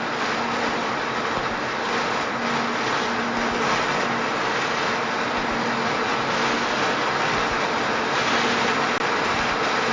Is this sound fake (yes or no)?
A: no